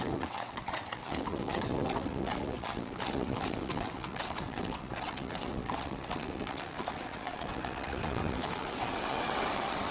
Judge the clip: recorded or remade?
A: remade